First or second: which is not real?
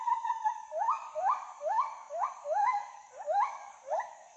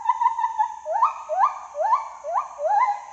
first